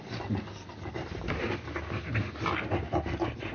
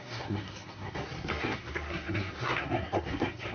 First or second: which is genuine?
first